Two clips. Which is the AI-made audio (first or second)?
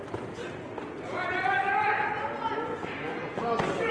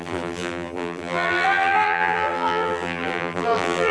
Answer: second